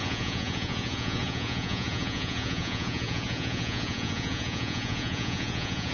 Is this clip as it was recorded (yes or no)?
no